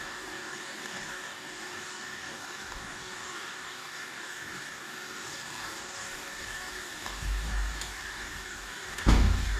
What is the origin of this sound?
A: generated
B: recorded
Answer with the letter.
A